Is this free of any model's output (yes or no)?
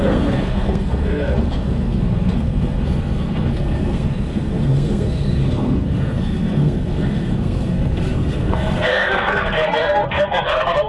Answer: no